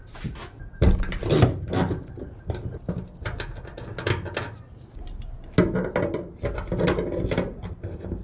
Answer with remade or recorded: recorded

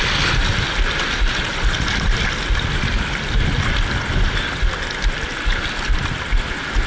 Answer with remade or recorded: recorded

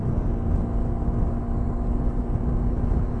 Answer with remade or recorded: recorded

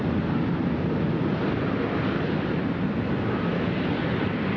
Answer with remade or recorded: recorded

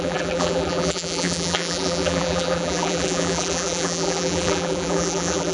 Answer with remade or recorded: remade